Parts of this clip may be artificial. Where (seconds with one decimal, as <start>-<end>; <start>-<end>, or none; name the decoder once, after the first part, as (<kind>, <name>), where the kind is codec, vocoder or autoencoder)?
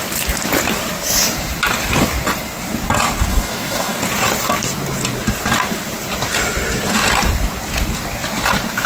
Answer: 3.3-4.0 (codec, DAC)